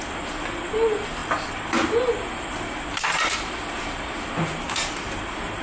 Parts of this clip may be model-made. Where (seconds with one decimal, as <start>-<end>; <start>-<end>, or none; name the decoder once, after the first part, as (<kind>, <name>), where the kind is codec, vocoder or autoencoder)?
4.6-5.1 (codec, DAC)